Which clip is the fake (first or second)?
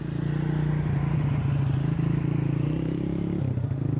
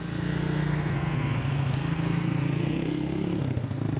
second